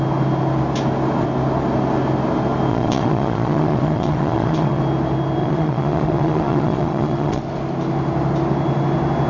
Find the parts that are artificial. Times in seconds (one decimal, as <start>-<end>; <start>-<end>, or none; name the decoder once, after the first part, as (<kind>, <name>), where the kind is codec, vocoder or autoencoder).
2.7-4.8 (vocoder, Vocos); 5.4-7.4